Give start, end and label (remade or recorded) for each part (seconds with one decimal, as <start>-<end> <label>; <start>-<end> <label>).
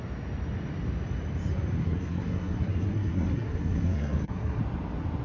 0.0-1.8 recorded; 1.8-4.6 remade; 4.6-5.2 recorded